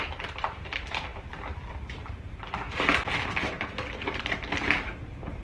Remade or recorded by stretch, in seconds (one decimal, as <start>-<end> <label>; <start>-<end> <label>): 0.0-5.4 recorded